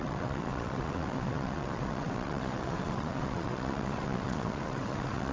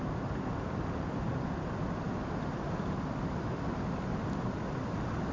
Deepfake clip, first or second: first